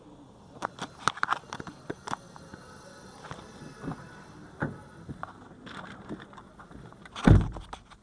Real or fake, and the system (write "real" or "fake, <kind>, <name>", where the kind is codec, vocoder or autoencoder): real